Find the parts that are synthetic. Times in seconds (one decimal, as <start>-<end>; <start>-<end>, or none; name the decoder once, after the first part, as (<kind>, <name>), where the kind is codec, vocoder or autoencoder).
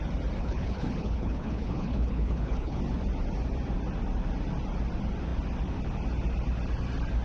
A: 0.4-2.8 (codec, HILCodec)